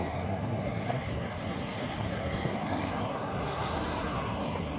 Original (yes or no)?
no